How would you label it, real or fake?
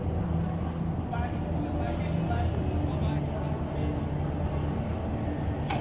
real